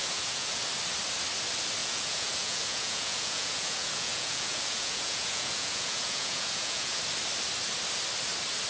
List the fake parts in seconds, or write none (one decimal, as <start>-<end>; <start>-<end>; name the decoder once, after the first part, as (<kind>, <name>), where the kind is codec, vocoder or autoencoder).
0.0-0.6 (vocoder, Vocos); 1.8-7.0